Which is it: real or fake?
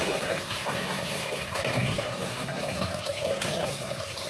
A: fake